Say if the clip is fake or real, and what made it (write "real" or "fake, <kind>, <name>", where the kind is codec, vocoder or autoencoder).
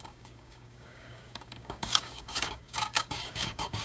fake, codec, DAC